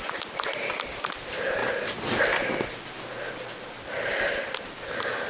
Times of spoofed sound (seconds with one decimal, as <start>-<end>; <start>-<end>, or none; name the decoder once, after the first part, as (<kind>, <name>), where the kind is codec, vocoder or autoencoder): none